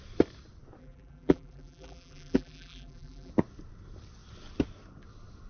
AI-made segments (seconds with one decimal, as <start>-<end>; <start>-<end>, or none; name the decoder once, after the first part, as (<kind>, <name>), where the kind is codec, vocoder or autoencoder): 0.8-3.3 (vocoder, BigVGAN v2)